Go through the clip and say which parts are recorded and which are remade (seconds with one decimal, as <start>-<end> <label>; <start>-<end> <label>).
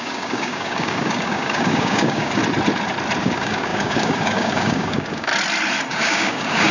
0.0-2.4 remade; 2.4-3.2 recorded; 3.2-5.3 remade; 5.3-5.9 recorded; 5.9-6.7 remade